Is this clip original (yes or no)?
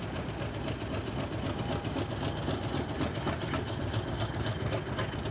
yes